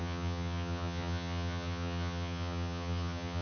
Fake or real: fake